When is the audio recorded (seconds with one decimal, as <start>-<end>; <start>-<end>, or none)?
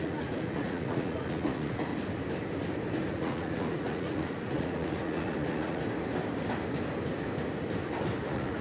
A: 1.9-3.1; 5.8-8.2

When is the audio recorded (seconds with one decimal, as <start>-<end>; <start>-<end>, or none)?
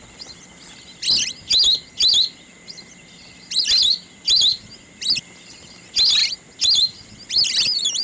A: 0.0-8.0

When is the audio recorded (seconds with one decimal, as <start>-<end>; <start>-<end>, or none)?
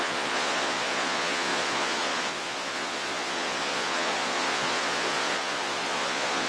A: none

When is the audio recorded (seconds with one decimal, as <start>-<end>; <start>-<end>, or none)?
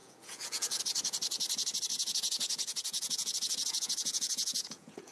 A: 0.8-1.9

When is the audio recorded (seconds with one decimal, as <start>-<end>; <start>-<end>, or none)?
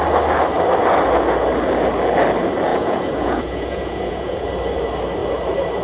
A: 0.0-2.7; 4.5-5.8